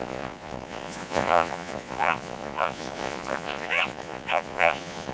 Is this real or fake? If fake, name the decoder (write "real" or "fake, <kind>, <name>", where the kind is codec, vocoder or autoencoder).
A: fake, vocoder, Vocos